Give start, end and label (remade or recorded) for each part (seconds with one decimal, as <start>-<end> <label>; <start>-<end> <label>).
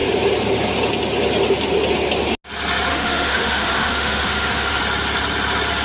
0.0-2.9 recorded; 2.9-4.8 remade; 4.8-5.8 recorded